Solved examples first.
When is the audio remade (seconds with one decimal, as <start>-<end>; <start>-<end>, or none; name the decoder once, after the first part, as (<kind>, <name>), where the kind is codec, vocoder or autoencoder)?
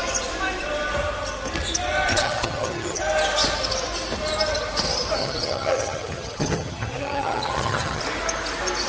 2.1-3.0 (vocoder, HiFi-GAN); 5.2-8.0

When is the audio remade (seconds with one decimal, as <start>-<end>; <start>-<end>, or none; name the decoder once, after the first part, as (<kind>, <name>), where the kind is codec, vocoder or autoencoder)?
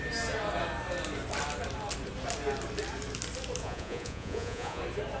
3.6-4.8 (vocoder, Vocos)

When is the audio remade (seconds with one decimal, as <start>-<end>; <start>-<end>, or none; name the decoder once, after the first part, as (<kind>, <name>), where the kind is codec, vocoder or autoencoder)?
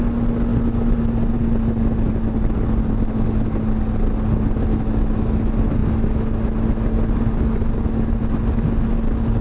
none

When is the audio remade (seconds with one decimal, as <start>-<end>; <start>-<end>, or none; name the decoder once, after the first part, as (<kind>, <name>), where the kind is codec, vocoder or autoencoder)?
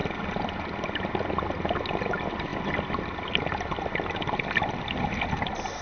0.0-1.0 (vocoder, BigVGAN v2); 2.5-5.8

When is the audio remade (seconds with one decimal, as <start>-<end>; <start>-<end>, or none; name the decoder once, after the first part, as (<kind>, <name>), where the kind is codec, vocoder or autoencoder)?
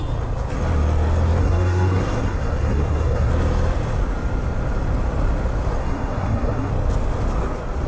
1.4-3.3 (codec, SNAC); 5.8-6.7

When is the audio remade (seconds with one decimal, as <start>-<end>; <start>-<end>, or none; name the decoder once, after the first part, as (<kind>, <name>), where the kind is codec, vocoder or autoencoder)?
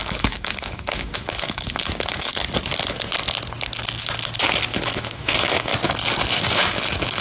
0.0-2.3 (autoencoder, DAC-VAE); 4.7-5.7; 6.3-7.2